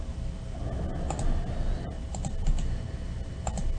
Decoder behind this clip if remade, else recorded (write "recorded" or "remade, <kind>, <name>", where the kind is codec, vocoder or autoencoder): recorded